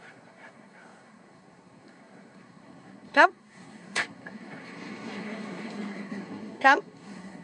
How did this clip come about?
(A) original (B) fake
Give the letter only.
B